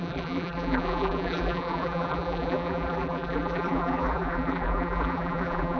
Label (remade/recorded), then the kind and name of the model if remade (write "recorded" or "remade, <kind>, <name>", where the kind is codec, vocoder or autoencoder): remade, vocoder, BigVGAN v2